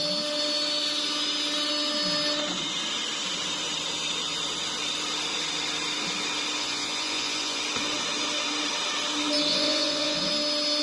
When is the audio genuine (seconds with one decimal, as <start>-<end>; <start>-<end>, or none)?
0.0-6.6; 7.6-9.5; 10.3-10.8